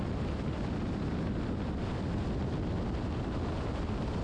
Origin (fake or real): real